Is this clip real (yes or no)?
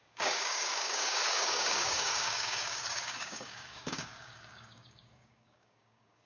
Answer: no